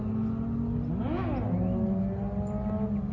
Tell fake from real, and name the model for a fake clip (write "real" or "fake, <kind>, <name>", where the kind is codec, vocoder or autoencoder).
real